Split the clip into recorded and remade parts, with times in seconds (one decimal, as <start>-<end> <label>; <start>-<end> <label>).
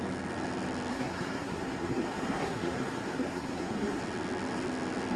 0.0-0.9 recorded; 0.9-4.0 remade; 4.0-5.2 recorded